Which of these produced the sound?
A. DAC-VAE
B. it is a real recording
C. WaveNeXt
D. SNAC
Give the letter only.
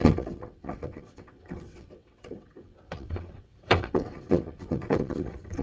C